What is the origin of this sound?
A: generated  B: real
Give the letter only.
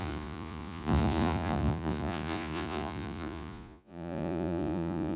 A